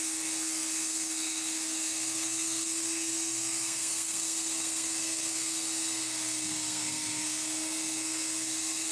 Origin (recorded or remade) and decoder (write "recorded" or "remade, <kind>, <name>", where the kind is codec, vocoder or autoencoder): remade, codec, SNAC